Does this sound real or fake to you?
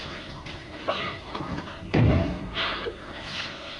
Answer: fake